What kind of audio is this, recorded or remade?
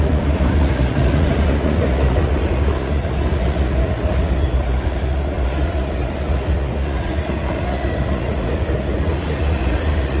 remade